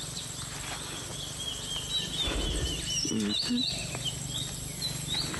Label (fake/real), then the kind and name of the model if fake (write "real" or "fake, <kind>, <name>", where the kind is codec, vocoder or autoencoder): real